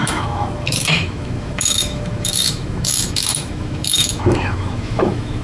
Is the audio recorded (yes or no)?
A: no